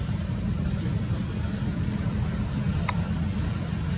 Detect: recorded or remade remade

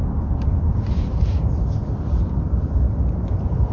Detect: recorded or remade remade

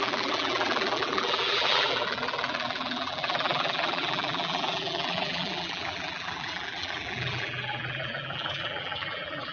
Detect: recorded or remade remade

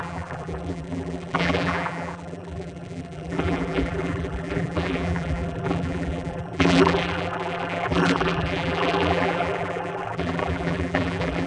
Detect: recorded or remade remade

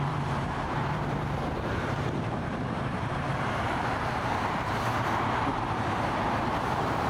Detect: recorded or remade remade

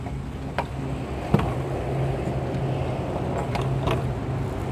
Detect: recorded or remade recorded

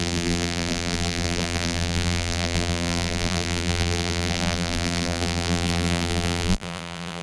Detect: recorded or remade remade